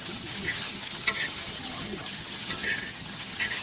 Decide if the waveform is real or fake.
fake